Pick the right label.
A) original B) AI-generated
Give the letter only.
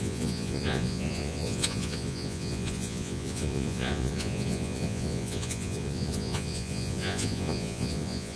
B